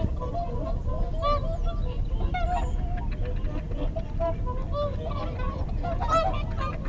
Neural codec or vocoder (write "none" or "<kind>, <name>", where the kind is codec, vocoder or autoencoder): none